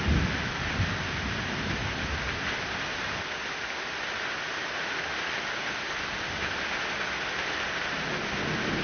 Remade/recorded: recorded